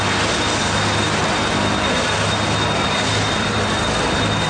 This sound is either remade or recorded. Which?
recorded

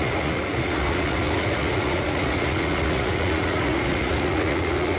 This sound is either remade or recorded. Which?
remade